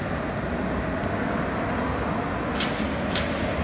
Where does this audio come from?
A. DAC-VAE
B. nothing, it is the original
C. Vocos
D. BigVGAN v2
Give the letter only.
B